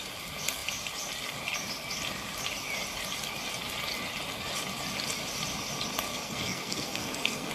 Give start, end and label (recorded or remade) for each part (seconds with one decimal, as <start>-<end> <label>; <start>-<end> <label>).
0.0-6.1 recorded; 6.1-7.5 remade